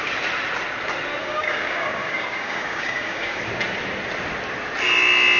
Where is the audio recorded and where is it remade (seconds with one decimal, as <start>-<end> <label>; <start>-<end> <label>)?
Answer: 0.0-1.2 recorded; 1.2-3.4 remade; 3.4-5.4 recorded

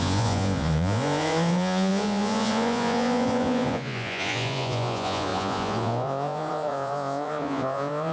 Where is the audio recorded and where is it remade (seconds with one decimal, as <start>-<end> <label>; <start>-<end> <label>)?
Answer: 0.0-8.1 remade

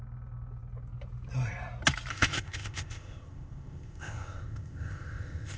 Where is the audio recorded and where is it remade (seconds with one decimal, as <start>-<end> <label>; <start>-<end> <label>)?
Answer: 0.0-2.1 recorded; 2.1-5.6 remade

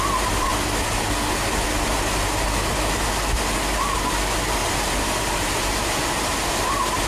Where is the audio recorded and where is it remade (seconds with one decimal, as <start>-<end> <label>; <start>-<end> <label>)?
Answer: 0.0-4.6 recorded; 4.6-6.6 remade; 6.6-7.1 recorded

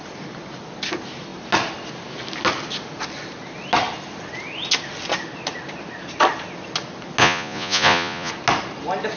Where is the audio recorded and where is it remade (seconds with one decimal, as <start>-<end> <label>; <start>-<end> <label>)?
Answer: 0.0-7.2 recorded; 7.2-8.3 remade; 8.3-9.2 recorded

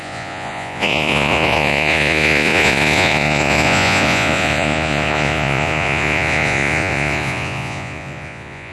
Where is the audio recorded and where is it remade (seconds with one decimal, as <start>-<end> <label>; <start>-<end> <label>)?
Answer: 0.0-8.7 remade

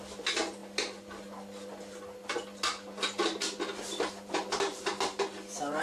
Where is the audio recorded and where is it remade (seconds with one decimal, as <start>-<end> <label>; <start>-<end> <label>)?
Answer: 0.0-5.8 recorded

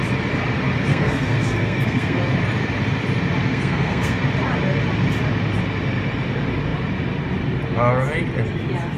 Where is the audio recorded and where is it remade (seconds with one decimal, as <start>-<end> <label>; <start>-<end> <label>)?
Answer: 0.0-0.9 recorded; 0.9-2.2 remade; 2.2-3.4 recorded; 3.4-4.2 remade; 4.2-9.0 recorded